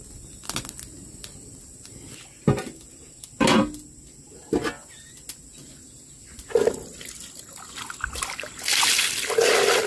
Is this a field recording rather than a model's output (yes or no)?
yes